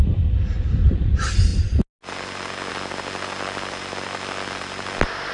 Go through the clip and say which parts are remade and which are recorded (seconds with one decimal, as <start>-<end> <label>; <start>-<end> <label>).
0.0-5.3 recorded